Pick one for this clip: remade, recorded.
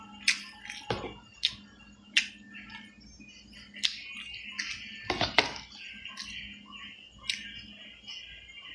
recorded